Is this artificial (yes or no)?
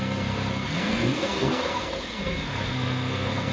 yes